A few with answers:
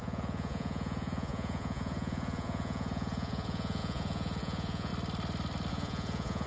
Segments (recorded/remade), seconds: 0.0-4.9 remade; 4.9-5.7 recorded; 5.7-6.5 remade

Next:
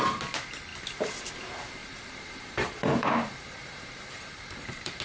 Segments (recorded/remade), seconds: 0.0-1.8 recorded; 1.8-5.0 remade

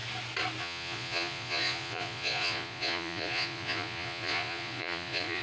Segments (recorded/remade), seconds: 0.0-0.6 recorded; 0.6-5.4 remade

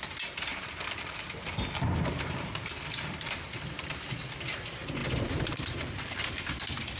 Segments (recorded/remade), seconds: 0.0-0.5 recorded; 0.5-4.0 remade; 4.0-5.0 recorded; 5.0-6.3 remade; 6.3-7.0 recorded

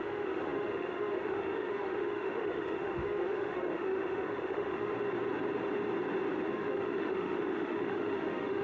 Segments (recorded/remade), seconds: 0.0-4.9 remade; 4.9-6.5 recorded; 6.5-8.6 remade